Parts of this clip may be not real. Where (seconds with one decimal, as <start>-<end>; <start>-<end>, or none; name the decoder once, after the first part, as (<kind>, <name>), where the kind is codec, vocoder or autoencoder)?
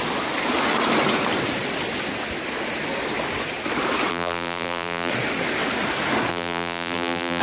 4.1-5.1 (vocoder, BigVGAN v2); 6.3-7.4